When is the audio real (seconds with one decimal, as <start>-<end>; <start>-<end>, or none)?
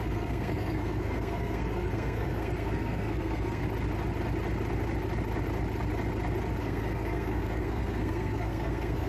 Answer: 3.6-6.6